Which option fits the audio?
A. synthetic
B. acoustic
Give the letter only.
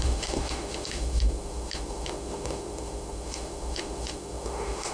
A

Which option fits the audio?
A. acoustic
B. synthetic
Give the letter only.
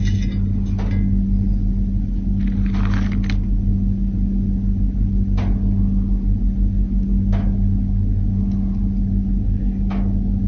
A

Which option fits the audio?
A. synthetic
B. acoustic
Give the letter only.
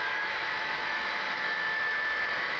A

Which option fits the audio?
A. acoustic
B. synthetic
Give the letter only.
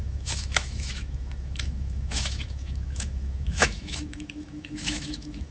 B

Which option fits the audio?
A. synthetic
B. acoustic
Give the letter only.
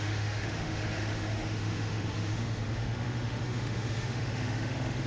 A